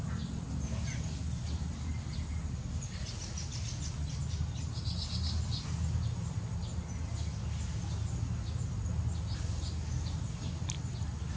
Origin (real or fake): real